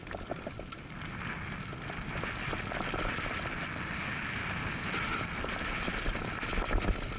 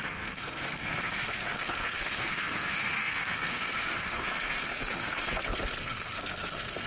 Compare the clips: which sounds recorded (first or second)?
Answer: first